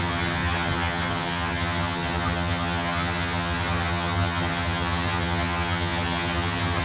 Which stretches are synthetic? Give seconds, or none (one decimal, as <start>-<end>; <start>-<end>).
0.0-6.8

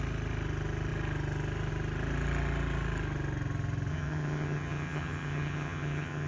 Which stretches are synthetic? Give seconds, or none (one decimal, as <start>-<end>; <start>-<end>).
3.9-6.3

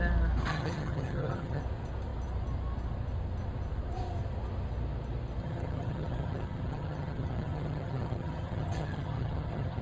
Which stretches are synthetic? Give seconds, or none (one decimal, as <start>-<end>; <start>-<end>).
0.5-1.6; 5.4-9.8

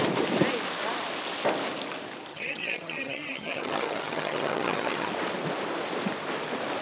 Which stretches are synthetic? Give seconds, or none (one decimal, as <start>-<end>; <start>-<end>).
2.3-5.1